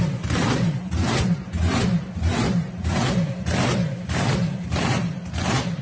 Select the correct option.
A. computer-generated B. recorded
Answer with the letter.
B